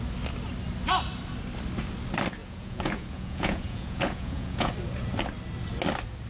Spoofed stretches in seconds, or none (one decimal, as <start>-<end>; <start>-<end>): 2.4-4.7